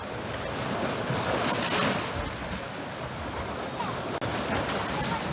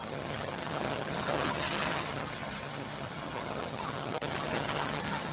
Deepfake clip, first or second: second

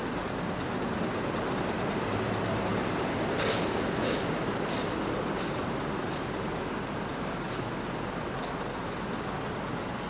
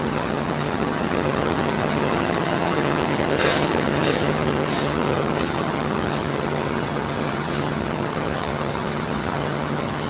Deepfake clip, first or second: second